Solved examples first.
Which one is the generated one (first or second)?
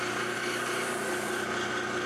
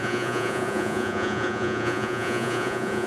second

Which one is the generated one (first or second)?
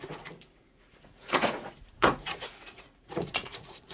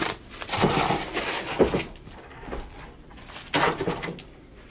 first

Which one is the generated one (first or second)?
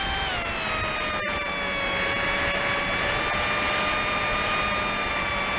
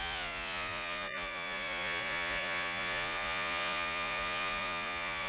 second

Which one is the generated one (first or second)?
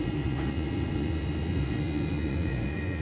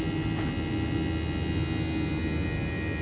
first